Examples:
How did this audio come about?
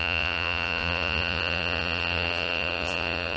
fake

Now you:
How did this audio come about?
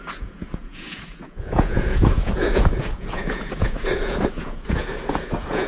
fake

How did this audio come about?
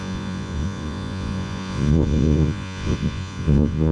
fake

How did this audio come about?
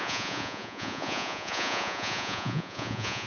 fake